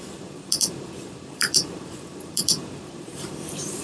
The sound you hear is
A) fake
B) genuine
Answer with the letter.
A